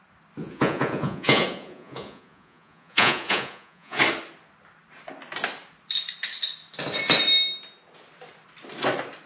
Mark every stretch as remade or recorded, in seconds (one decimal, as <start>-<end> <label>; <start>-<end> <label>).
0.0-0.4 recorded; 0.4-4.0 remade; 4.0-9.3 recorded